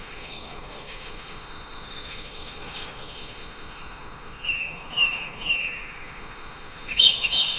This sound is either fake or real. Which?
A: fake